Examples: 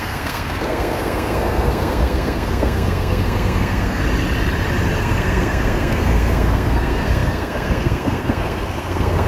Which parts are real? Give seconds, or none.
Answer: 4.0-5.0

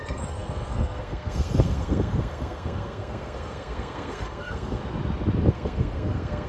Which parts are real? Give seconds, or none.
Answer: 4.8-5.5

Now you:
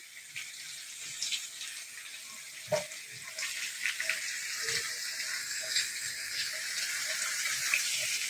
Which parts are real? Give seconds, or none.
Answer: 0.0-5.4; 6.5-8.3